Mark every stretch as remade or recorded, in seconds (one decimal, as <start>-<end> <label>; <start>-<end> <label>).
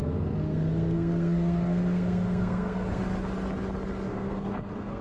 0.0-3.0 remade; 3.0-4.1 recorded; 4.1-5.0 remade